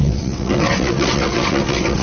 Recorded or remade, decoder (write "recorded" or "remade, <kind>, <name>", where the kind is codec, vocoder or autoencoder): remade, vocoder, WaveNeXt